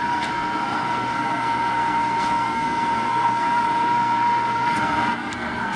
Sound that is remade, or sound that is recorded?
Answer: remade